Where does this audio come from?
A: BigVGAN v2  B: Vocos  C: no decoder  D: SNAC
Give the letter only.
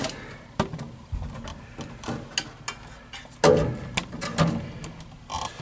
C